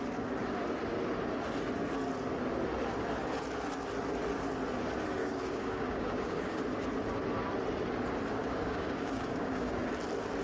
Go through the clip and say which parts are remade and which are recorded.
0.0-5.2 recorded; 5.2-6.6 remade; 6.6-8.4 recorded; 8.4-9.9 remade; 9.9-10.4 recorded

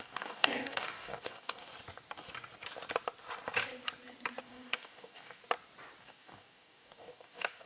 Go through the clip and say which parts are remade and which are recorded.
0.0-1.7 remade; 1.7-4.4 recorded; 4.4-5.4 remade; 5.4-6.0 recorded; 6.0-7.7 remade

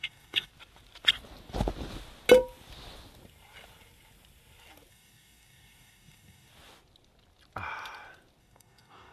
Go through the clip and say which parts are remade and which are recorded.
0.0-0.5 remade; 0.5-4.9 recorded; 4.9-6.5 remade; 6.5-8.4 recorded; 8.4-9.1 remade

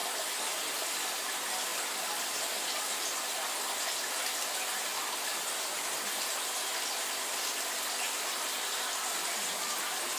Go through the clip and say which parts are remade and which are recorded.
0.0-10.2 recorded